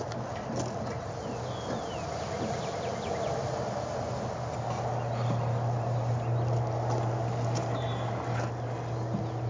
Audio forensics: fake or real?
real